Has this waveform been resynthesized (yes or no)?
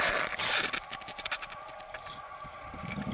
yes